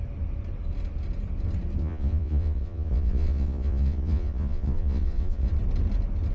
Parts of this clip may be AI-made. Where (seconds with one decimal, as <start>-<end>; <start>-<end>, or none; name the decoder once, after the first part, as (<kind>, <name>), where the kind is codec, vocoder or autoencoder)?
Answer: 1.8-5.5 (vocoder, Vocos)